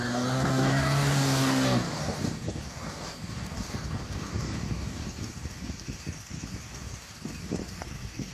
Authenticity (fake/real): fake